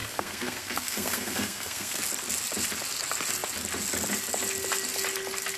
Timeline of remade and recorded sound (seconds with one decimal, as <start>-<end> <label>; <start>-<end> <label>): 0.0-2.0 remade; 2.0-5.6 recorded